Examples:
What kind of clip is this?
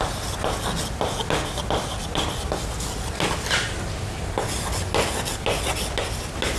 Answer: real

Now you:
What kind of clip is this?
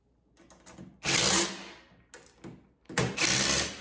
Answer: real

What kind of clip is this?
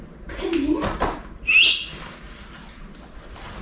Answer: real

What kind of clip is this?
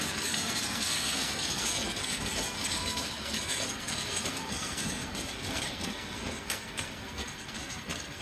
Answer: fake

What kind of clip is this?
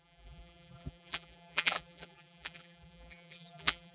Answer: fake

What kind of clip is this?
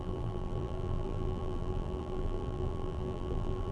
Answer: fake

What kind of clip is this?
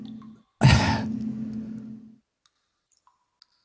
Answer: real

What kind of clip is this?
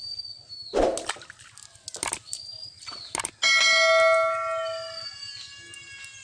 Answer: real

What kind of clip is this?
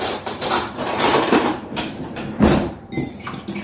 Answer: fake